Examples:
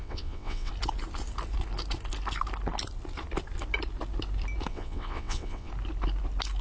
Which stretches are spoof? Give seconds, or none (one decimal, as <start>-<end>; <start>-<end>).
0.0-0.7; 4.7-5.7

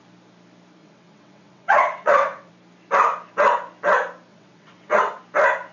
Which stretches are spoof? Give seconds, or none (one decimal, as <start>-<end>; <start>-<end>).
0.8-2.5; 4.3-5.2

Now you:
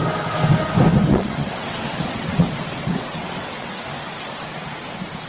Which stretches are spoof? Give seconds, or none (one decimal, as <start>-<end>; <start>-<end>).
1.1-3.9

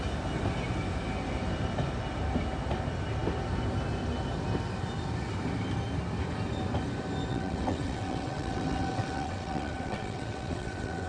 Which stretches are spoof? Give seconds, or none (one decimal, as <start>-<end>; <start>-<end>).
7.3-11.1

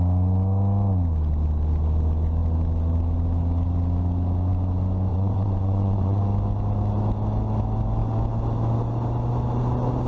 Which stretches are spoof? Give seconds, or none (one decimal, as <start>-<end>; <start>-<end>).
5.1-6.2

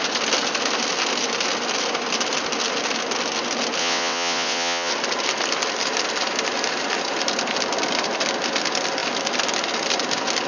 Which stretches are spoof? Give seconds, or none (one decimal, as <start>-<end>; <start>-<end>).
3.8-4.9

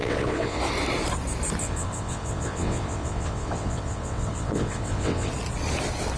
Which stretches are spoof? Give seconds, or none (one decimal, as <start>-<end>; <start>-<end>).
0.0-0.6; 1.6-5.3

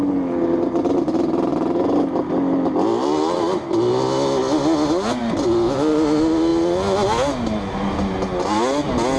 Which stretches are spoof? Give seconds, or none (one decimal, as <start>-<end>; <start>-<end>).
none